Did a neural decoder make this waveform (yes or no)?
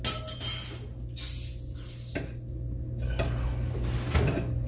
no